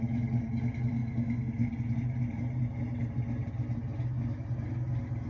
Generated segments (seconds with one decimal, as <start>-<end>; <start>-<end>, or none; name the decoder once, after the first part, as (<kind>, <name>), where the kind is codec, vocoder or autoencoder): none